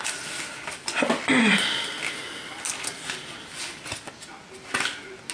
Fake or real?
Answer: real